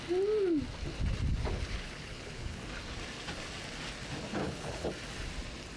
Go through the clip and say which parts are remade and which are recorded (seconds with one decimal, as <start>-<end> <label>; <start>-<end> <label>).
0.0-1.3 recorded; 1.3-2.6 remade; 2.6-4.4 recorded; 4.4-4.9 remade; 4.9-5.8 recorded